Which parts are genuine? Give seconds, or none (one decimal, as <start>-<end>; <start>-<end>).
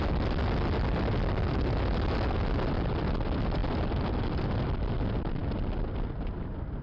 0.0-6.8